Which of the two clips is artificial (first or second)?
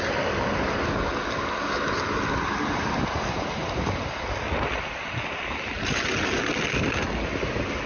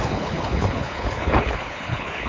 second